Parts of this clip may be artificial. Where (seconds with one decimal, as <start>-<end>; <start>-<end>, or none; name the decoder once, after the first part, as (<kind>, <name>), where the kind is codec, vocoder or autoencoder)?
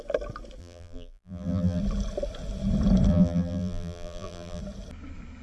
0.6-1.8 (vocoder, BigVGAN v2); 3.1-4.6